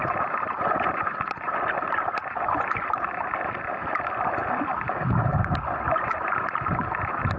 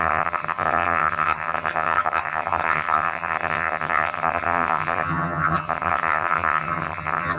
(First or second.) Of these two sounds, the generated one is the second